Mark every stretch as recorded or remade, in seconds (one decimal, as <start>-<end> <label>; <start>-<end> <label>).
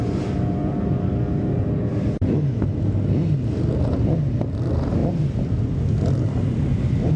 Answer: 0.0-1.9 recorded; 1.9-2.6 remade; 2.6-7.2 recorded